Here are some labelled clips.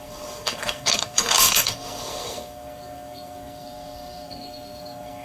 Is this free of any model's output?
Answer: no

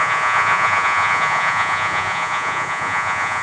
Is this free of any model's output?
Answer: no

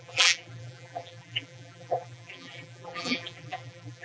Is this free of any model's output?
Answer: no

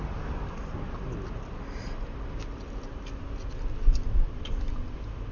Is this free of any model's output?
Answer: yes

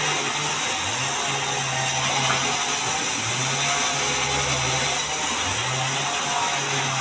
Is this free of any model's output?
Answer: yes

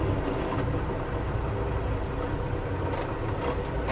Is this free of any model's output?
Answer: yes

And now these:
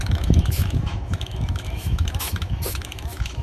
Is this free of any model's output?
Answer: no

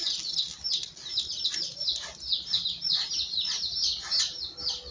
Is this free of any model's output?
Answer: yes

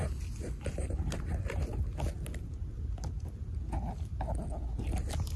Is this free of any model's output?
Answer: yes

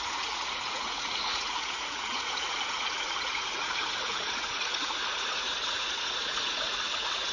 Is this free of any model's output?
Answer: no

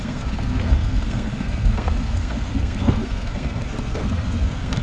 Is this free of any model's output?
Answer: no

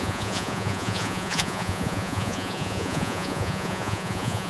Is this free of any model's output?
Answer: no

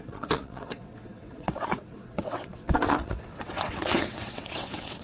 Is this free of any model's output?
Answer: no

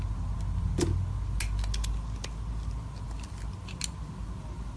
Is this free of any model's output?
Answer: yes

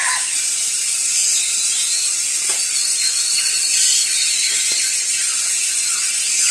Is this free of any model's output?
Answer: yes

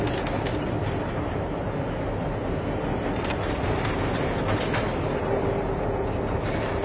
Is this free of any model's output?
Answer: yes